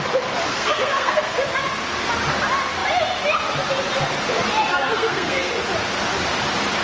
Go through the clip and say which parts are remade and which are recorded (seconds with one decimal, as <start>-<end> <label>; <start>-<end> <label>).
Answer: 0.0-0.5 recorded; 0.5-1.3 remade; 1.3-4.7 recorded; 4.7-5.5 remade; 5.5-6.8 recorded